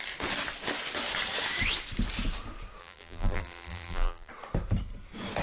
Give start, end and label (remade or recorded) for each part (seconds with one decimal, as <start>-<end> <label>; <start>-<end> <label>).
0.0-2.8 recorded; 2.8-4.3 remade; 4.3-5.4 recorded